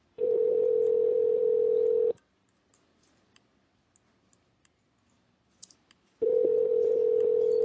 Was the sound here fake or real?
real